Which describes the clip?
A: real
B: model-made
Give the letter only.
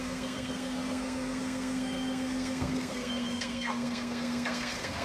B